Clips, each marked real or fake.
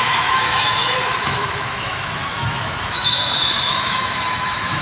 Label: fake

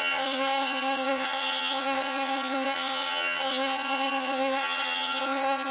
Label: fake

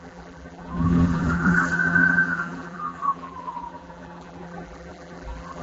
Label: fake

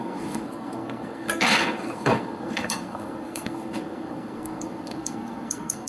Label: fake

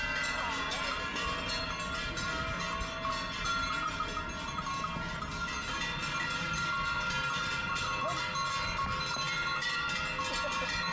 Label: real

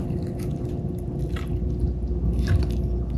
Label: real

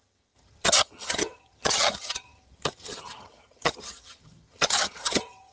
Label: fake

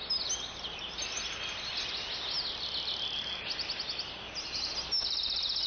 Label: real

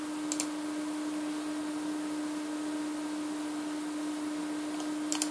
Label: real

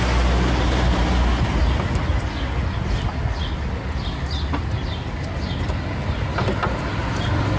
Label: real